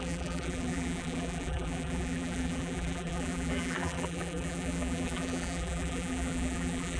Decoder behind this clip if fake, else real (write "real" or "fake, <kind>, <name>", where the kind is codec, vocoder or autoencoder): fake, vocoder, BigVGAN v2